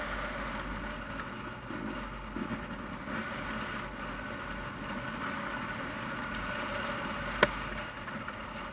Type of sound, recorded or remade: recorded